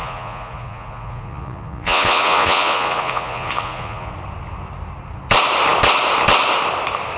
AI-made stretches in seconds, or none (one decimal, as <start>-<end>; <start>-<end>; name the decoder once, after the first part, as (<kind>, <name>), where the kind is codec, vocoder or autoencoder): 0.0-4.1 (vocoder, Vocos)